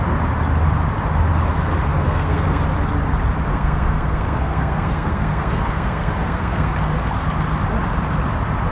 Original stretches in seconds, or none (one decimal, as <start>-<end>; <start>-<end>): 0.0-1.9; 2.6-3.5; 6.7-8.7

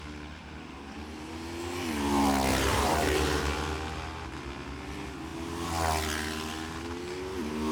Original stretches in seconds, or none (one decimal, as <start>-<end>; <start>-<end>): 0.0-0.4; 1.3-2.5; 3.4-7.7

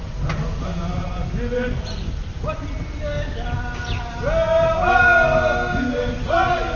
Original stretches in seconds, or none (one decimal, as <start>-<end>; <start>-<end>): 0.0-6.8

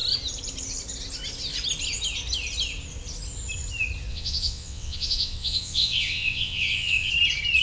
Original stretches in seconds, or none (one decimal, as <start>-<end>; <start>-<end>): 0.0-4.1; 7.1-7.6

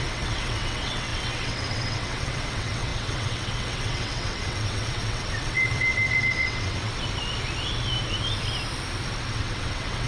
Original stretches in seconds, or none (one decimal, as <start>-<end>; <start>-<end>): 6.9-9.3

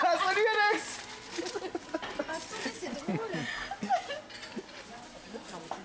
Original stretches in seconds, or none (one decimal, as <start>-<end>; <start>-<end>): 0.0-5.8